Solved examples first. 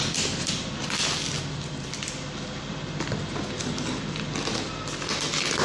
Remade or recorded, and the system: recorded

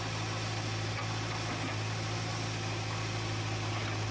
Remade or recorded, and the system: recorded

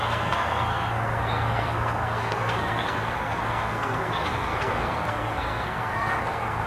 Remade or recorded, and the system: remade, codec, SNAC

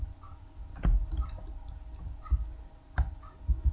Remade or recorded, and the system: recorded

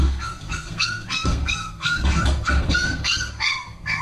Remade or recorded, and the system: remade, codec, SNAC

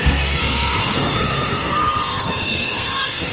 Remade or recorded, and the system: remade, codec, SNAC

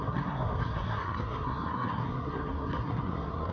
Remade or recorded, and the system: remade, codec, SNAC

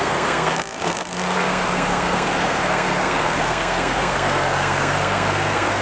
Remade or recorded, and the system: remade, codec, SNAC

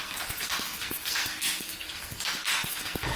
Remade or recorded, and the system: remade, codec, SNAC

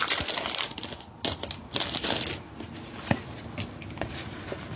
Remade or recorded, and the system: recorded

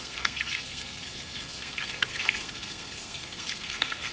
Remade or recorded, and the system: remade, codec, SNAC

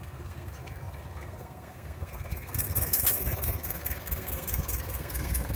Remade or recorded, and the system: remade, codec, SNAC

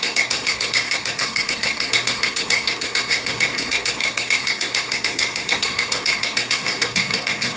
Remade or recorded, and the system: remade, codec, SNAC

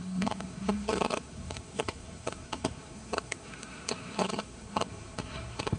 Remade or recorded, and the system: remade, codec, SNAC